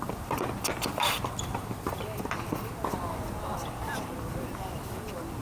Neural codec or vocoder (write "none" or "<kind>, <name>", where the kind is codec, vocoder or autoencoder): vocoder, BigVGAN v2